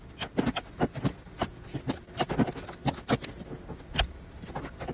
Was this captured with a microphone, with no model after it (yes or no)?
yes